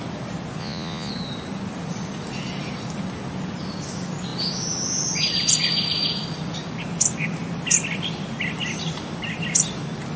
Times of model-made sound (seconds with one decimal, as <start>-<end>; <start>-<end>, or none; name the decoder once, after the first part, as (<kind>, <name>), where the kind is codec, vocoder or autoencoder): 0.6-1.1 (vocoder, Vocos)